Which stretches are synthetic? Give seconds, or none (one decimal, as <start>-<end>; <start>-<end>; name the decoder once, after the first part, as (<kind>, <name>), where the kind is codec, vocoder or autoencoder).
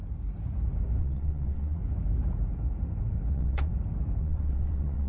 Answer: 1.0-1.8 (vocoder, WaveNeXt); 3.3-3.7; 4.2-5.1